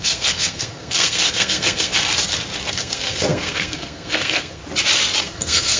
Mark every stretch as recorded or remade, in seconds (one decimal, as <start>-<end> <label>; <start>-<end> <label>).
0.0-1.9 remade; 1.9-2.7 recorded; 2.7-4.6 remade; 4.6-5.2 recorded; 5.2-5.8 remade